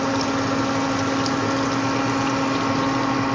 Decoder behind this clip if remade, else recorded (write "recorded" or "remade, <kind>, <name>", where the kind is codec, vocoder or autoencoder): recorded